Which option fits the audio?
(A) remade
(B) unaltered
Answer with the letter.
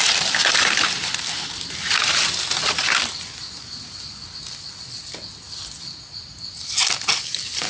B